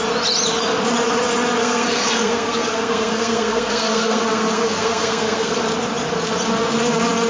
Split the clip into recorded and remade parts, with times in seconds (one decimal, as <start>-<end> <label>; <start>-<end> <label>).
0.0-1.6 recorded; 1.6-5.5 remade; 5.5-7.3 recorded